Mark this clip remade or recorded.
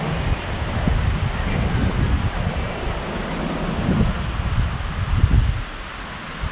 recorded